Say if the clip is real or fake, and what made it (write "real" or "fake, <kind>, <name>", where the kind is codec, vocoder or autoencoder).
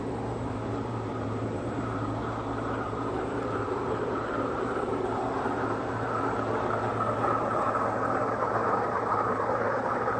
fake, vocoder, BigVGAN v2